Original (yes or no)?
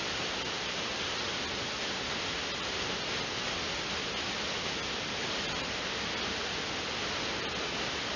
yes